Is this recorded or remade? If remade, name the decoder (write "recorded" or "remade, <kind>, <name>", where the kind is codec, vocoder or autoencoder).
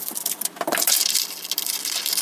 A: recorded